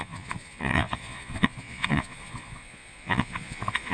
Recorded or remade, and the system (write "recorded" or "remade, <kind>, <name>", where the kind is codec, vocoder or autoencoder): remade, vocoder, Vocos